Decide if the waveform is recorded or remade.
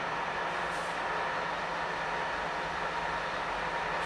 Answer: recorded